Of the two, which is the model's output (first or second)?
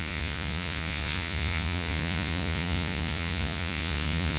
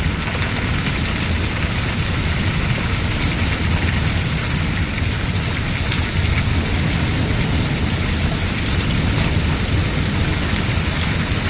first